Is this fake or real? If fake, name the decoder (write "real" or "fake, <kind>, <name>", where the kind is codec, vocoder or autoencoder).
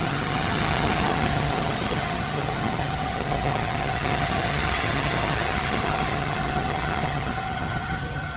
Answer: fake, vocoder, HiFi-GAN